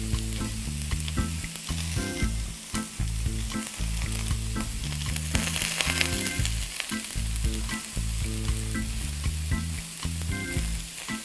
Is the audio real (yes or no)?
yes